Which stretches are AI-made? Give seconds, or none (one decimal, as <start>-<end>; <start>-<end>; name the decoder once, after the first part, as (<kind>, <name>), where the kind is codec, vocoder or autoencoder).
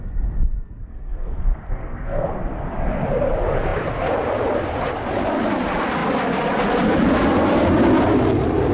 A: 0.8-2.3 (codec, SNAC)